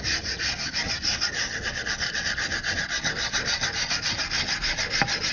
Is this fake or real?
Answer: real